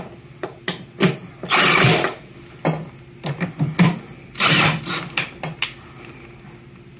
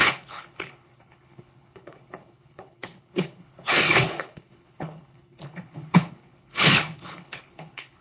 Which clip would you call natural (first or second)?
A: first